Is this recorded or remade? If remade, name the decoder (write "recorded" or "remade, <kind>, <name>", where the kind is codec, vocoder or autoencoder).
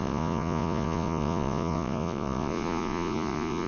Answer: remade, vocoder, Vocos